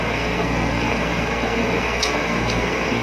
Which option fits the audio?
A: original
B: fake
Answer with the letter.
B